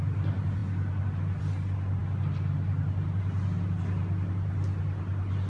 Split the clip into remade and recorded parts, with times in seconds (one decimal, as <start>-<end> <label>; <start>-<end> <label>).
0.0-5.5 recorded

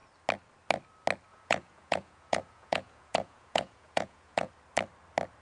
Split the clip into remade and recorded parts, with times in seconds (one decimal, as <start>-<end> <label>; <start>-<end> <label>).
0.0-1.3 recorded; 1.3-4.5 remade; 4.5-5.4 recorded